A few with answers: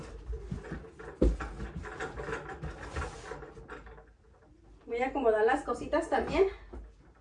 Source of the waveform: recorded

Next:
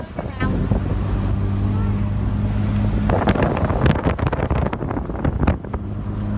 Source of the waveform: recorded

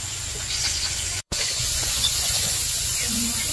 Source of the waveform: remade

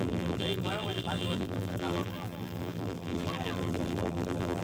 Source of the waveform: remade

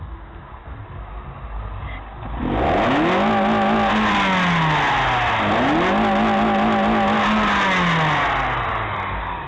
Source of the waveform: recorded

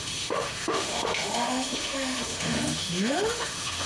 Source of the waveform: remade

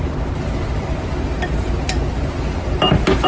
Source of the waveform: recorded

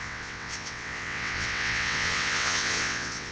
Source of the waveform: remade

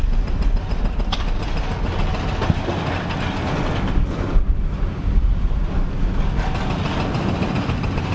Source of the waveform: recorded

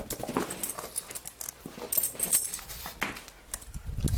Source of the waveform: recorded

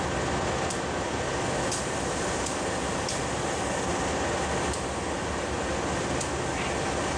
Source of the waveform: recorded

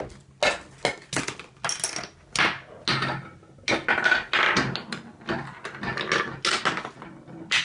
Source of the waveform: recorded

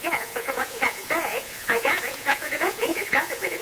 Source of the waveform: remade